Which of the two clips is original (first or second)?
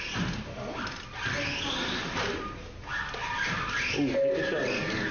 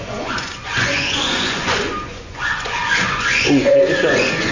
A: first